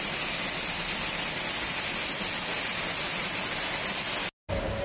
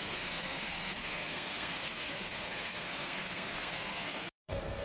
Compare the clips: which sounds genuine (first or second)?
first